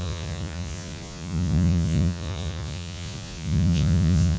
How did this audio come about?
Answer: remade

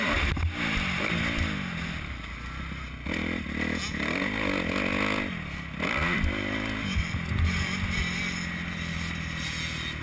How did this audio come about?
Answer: recorded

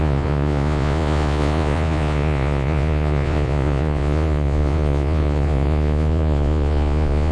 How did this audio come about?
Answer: remade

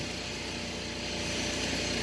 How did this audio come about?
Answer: recorded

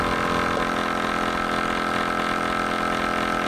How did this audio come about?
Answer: recorded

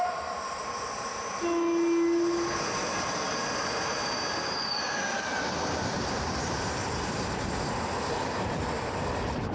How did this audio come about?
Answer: recorded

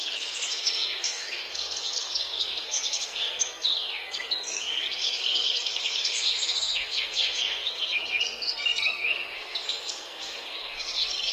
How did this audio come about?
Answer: remade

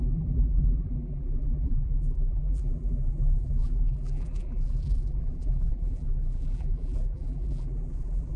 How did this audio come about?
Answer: remade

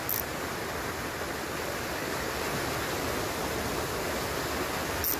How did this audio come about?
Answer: recorded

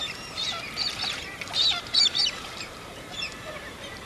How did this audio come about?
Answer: remade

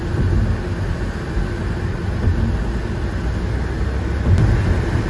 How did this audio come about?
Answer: recorded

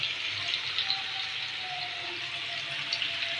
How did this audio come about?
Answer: recorded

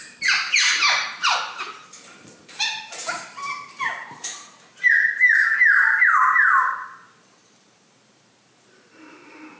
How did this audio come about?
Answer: remade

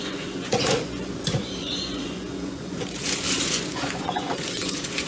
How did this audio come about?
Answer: remade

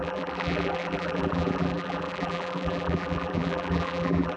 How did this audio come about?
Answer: remade